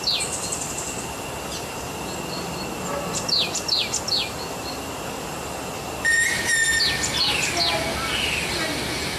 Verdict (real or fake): real